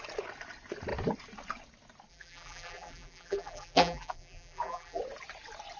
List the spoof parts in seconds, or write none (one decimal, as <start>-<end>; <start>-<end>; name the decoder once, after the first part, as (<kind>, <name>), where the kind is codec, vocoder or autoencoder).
2.1-5.0 (vocoder, BigVGAN v2)